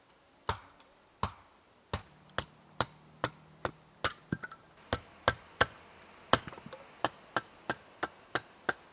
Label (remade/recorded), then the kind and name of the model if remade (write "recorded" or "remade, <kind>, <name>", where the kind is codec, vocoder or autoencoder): recorded